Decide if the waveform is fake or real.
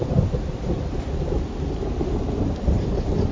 real